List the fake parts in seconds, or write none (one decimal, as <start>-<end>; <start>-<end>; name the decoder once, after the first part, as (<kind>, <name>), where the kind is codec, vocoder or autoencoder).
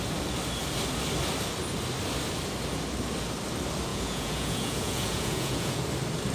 3.9-5.8 (vocoder, Vocos)